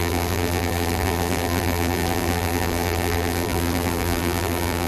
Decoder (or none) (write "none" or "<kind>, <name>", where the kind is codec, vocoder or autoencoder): vocoder, BigVGAN v2